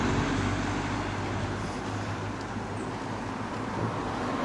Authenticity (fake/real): real